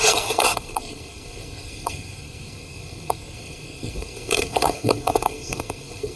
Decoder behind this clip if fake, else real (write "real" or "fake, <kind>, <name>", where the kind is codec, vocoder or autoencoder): fake, codec, SNAC